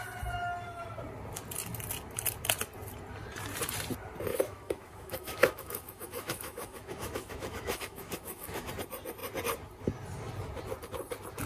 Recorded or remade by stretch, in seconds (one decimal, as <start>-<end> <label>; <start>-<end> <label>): 0.0-4.3 recorded; 4.3-8.7 remade; 8.7-11.5 recorded